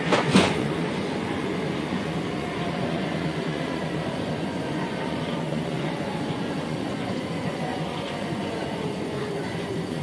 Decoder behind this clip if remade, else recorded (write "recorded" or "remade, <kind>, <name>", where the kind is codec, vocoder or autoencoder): remade, vocoder, Vocos